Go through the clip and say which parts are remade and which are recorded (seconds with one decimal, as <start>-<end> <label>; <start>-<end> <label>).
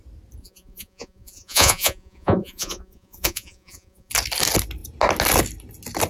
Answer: 0.0-0.4 recorded; 0.4-4.1 remade; 4.1-6.1 recorded